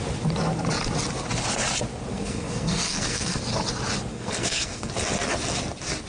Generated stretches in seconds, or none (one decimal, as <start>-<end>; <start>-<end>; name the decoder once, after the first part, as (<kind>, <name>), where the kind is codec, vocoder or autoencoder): 2.1-3.4 (codec, SNAC); 4.1-4.9